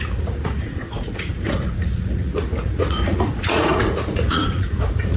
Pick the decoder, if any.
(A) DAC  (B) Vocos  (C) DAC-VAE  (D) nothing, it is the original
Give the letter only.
B